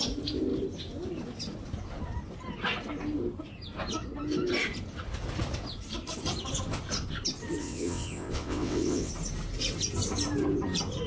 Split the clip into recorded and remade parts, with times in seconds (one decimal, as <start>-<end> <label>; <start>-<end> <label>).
0.0-7.6 recorded; 7.6-9.1 remade; 9.1-11.1 recorded